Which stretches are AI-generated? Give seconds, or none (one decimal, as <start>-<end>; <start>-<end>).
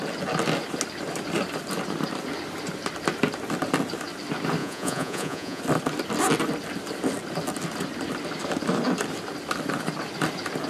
4.6-5.6